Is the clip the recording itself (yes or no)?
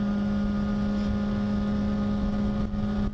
yes